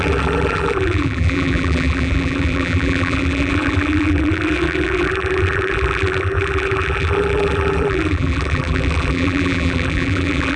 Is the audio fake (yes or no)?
yes